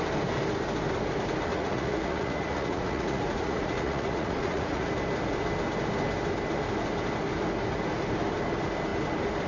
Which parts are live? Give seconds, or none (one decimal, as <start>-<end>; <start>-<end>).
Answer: 0.0-1.5; 4.9-9.5